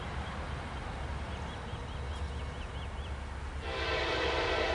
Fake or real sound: real